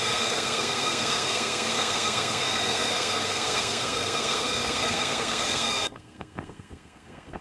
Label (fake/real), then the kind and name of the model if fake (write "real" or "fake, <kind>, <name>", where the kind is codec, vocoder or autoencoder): fake, codec, SNAC